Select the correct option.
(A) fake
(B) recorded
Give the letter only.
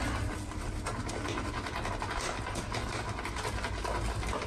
B